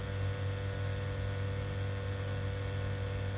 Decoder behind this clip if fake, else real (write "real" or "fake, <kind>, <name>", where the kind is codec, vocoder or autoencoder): real